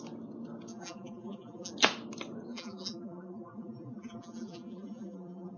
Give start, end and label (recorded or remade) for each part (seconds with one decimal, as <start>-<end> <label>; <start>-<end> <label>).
0.0-0.7 recorded; 0.7-1.7 remade; 1.7-2.5 recorded; 2.5-5.6 remade